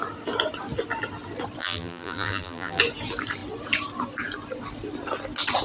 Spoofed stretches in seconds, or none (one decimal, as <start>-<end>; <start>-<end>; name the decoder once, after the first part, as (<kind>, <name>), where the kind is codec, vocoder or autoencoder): 1.6-2.8 (vocoder, BigVGAN v2)